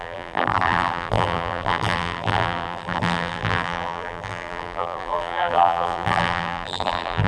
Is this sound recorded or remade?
remade